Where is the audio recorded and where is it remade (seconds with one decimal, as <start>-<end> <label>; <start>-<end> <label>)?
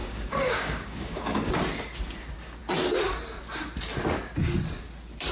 0.0-1.5 remade; 1.5-5.3 recorded